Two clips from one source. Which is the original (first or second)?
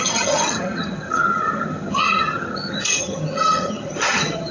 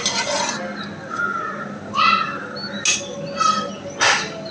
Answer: second